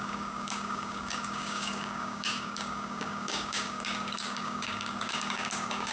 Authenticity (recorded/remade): remade